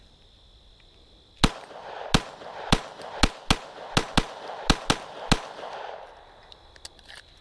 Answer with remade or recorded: recorded